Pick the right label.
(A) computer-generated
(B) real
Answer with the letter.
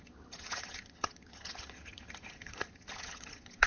A